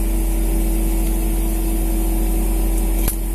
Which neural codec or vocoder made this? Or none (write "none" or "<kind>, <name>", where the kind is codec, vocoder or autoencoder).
none